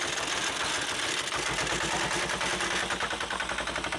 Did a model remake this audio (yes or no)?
no